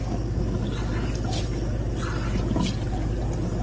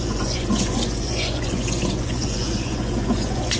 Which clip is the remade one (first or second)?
second